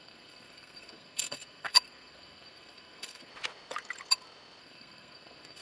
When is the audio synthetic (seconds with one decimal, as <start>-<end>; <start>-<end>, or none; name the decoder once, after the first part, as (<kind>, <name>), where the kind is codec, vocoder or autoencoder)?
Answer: 0.0-3.3 (codec, SNAC); 4.6-5.6